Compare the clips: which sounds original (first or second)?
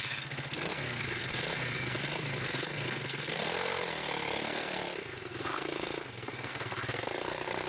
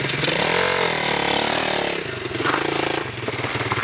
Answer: second